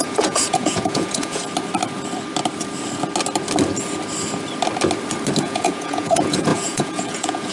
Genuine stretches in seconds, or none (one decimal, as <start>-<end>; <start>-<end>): 1.4-5.4